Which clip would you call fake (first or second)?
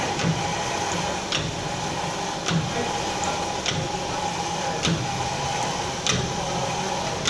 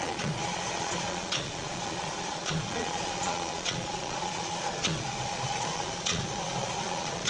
second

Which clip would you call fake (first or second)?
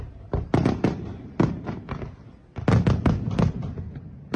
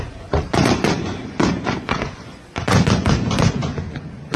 second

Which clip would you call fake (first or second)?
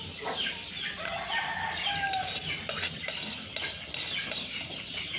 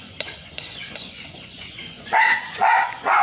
second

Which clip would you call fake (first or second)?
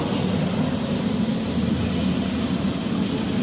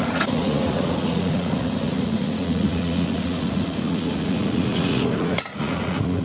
second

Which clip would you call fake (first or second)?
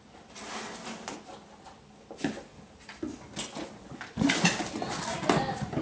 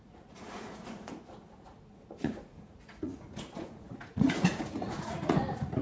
second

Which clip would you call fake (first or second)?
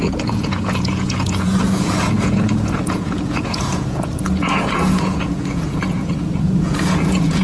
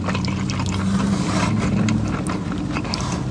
first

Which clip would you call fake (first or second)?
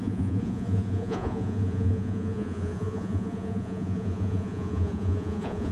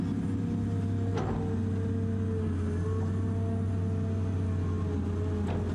first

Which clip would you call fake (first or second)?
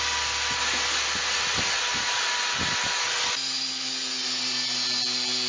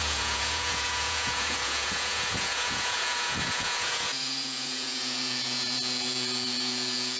second